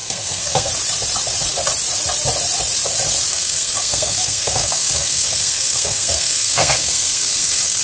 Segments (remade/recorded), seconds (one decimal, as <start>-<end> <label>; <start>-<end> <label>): 0.0-0.7 remade; 0.7-3.3 recorded; 3.3-7.8 remade